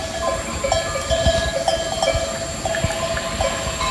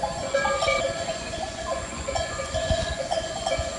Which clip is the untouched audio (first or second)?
first